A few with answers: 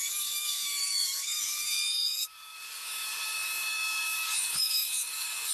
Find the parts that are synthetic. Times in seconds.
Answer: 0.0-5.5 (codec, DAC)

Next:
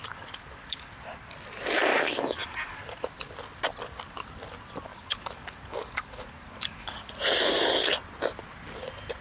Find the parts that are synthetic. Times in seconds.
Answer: 0.0-0.9 (codec, DAC); 1.9-3.0; 4.9-7.1

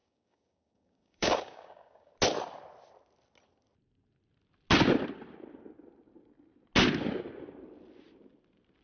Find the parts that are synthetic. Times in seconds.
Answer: 0.0-2.1 (codec, DAC)